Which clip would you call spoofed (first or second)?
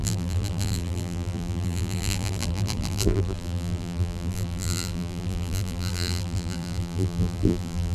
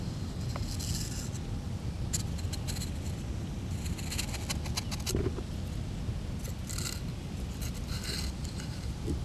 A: first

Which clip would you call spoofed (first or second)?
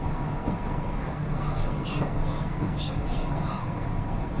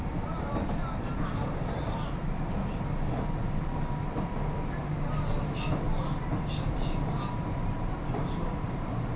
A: first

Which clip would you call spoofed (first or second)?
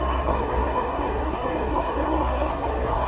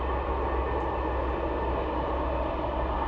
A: first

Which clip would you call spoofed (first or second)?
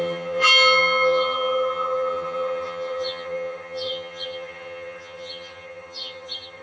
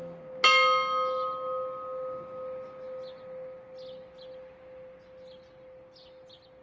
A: first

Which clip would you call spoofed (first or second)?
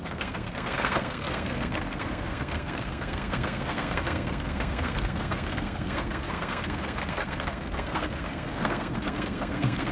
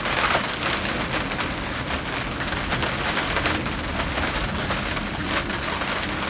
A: first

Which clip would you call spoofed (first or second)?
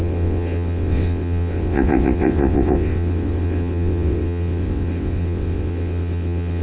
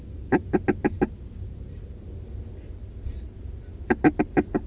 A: first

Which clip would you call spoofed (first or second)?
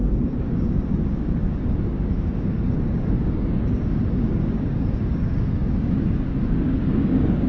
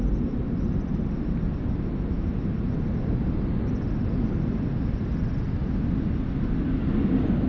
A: first